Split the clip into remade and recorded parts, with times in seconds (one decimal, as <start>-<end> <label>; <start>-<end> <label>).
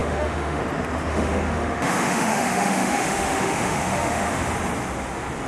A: 0.0-0.6 remade; 0.6-1.1 recorded; 1.1-4.4 remade; 4.4-5.5 recorded